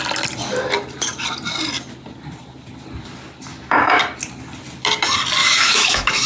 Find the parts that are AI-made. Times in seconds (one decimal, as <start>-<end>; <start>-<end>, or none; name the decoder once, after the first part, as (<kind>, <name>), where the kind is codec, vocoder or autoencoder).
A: 3.5-4.0 (autoencoder, DAC-VAE); 5.4-6.3